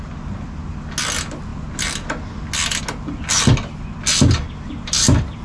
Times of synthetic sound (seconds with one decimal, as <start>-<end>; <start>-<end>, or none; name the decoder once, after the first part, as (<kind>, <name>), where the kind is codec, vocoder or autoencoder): none